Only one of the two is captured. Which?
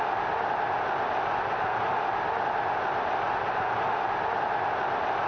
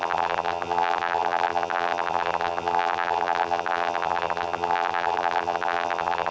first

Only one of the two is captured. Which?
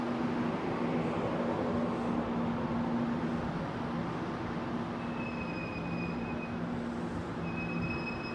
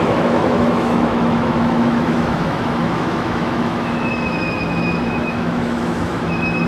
first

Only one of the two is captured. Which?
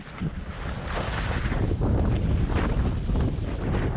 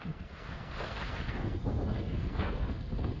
first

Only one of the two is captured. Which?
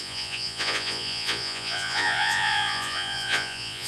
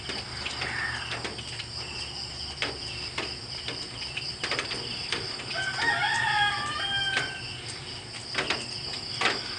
second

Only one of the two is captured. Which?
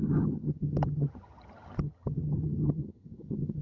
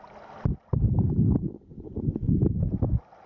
second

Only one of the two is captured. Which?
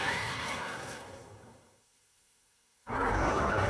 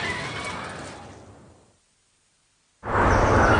second